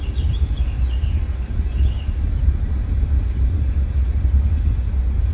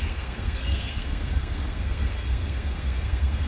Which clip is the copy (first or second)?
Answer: second